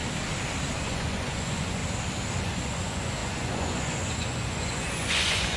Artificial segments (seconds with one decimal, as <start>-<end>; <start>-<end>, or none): 0.8-1.8; 2.4-5.6